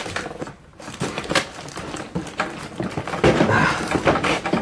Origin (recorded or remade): remade